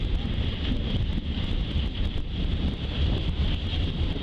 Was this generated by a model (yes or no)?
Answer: yes